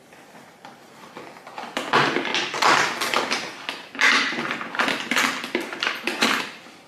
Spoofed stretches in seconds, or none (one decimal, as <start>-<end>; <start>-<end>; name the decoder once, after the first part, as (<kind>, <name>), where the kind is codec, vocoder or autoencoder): none